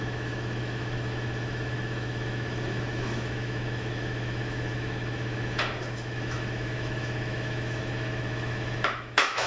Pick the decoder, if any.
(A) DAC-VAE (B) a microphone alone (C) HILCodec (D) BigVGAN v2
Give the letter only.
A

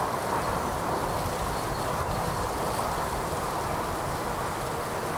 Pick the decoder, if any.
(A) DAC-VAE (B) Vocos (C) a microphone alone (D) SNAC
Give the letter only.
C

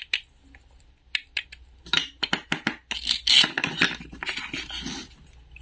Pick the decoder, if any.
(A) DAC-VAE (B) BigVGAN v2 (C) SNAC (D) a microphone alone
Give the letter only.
D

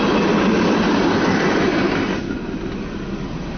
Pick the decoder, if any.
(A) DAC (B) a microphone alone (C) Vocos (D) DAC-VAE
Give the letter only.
B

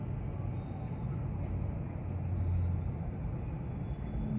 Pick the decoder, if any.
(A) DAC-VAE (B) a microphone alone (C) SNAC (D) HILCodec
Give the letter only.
B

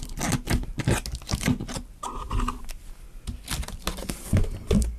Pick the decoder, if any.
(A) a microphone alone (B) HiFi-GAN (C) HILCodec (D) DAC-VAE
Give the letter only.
A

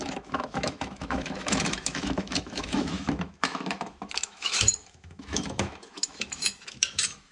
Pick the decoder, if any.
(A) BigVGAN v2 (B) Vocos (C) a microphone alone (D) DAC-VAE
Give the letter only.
D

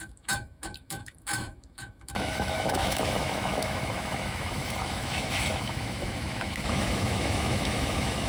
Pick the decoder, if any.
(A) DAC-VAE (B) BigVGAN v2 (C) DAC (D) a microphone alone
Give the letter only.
A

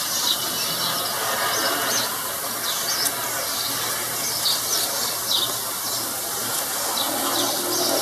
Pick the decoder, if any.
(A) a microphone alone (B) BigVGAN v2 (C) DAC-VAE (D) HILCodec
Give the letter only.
A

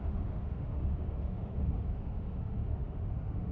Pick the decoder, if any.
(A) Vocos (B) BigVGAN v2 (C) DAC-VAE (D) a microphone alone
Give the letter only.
C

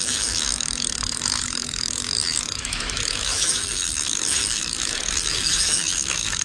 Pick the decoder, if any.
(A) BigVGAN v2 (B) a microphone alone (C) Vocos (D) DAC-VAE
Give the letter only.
D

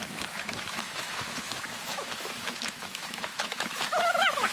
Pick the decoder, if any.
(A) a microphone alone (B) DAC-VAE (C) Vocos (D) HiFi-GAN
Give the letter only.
B